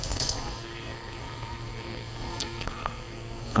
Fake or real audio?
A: fake